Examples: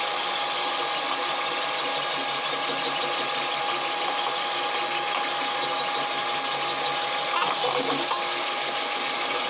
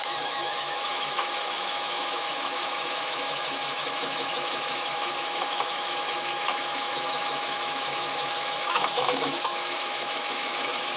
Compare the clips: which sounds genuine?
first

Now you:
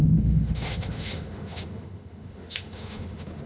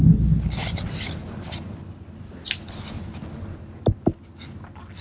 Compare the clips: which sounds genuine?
second